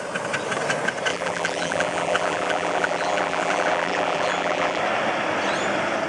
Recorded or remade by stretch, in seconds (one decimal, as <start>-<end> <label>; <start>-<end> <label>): 0.0-1.1 recorded; 1.1-4.8 remade; 4.8-6.1 recorded